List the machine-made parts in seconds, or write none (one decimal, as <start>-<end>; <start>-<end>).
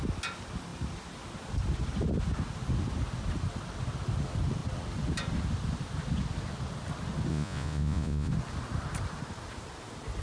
7.3-8.3